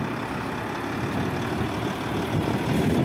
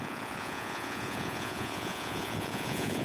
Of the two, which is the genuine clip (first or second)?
first